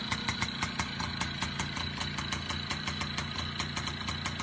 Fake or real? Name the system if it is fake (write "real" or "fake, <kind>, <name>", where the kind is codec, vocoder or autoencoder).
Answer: real